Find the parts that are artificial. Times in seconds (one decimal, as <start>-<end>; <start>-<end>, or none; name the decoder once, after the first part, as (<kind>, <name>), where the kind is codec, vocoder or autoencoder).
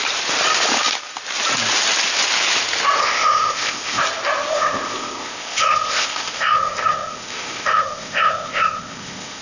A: 3.0-4.0 (codec, ZipCodec); 4.5-9.4